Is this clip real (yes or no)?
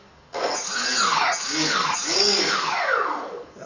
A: no